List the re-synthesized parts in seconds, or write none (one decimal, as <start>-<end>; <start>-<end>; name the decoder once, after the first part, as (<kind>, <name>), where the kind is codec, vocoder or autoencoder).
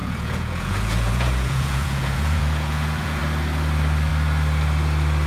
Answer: 0.0-3.2 (vocoder, Vocos)